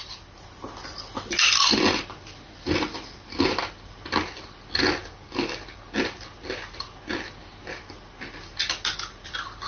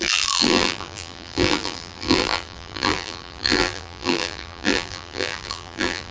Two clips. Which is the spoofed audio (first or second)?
second